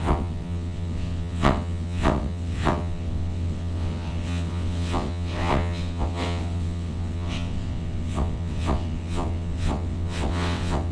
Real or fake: fake